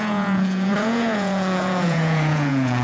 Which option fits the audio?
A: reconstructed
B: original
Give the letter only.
A